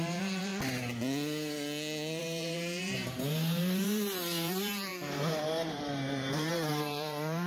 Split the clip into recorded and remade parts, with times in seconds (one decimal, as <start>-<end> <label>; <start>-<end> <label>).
0.0-0.5 remade; 0.5-2.2 recorded; 2.2-7.5 remade